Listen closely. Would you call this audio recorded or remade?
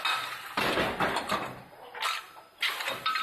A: recorded